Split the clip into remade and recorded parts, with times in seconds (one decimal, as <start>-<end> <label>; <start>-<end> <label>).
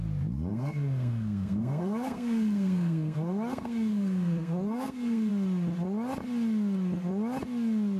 0.0-0.5 recorded; 0.5-5.3 remade; 5.3-8.0 recorded